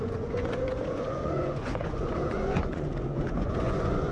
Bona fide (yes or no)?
no